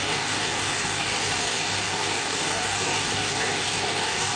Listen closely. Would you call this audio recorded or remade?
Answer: remade